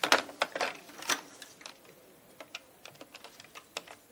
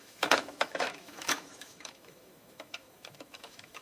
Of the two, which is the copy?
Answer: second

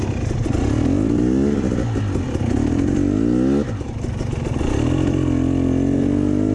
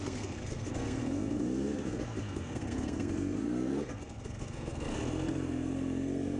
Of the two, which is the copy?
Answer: second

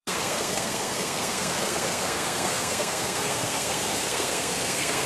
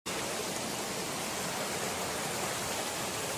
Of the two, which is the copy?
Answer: first